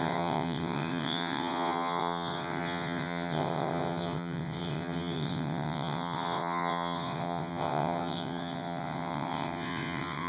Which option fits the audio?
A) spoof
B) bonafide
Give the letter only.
A